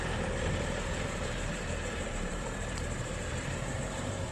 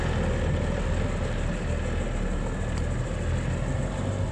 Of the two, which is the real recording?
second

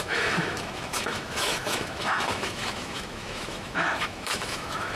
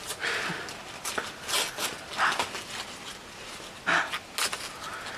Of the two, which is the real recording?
second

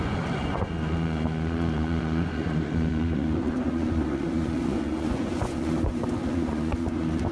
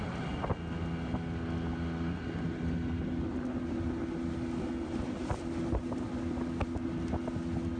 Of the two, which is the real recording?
second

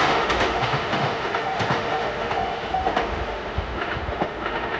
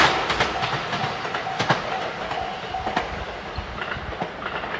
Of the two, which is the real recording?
second